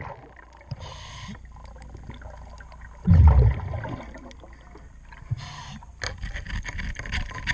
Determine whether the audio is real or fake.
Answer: real